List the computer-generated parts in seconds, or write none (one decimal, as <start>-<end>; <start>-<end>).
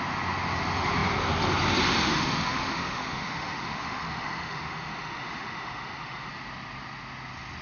2.2-6.3